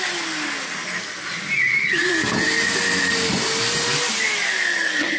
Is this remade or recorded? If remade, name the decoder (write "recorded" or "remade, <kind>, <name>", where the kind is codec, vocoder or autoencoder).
recorded